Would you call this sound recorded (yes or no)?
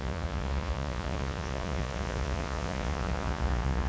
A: no